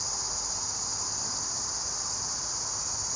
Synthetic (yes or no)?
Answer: no